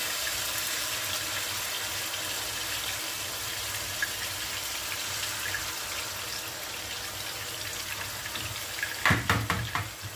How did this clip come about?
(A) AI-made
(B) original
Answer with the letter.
B